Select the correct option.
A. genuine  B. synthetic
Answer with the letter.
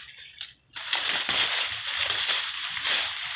A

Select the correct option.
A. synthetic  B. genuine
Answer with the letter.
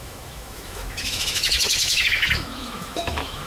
A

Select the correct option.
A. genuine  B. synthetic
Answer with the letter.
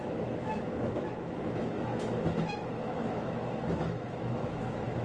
B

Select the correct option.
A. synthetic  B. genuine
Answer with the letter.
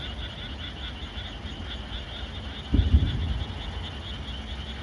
B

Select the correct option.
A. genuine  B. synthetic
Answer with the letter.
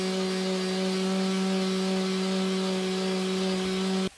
A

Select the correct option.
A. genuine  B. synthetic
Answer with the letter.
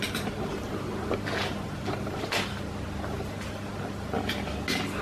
A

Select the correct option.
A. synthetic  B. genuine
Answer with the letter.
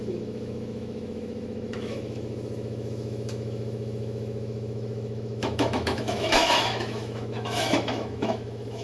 A